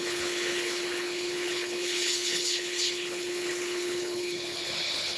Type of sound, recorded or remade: remade